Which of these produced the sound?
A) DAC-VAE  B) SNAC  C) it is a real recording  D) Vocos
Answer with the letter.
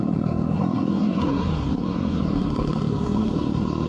B